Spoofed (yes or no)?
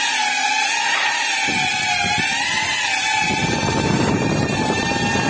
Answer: no